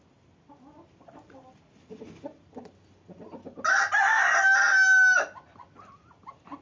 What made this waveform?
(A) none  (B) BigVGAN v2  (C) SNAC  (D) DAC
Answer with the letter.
A